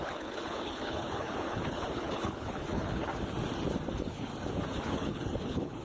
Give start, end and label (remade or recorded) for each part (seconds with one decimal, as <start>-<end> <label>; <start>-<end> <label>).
0.0-3.1 remade; 3.1-3.9 recorded; 3.9-4.3 remade; 4.3-4.8 recorded; 4.8-5.8 remade

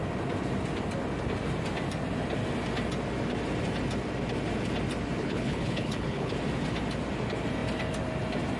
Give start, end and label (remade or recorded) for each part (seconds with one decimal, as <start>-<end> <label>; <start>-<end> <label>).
0.0-5.2 recorded; 5.2-6.3 remade; 6.3-8.6 recorded